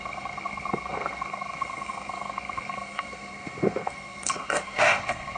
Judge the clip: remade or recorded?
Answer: remade